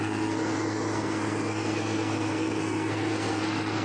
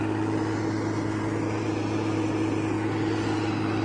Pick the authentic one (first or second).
second